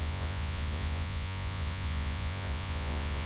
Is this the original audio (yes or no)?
no